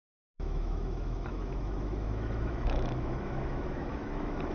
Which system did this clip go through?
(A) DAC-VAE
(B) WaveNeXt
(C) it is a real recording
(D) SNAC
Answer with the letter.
A